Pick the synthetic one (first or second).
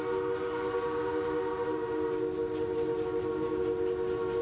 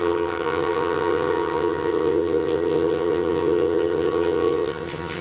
second